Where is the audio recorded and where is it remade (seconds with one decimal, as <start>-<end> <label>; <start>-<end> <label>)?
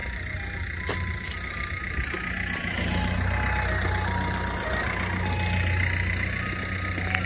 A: 0.0-7.3 recorded